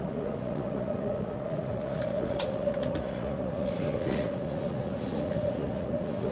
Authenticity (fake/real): fake